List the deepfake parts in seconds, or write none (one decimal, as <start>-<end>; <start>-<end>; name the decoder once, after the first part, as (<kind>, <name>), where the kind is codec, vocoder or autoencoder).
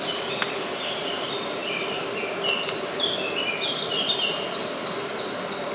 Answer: none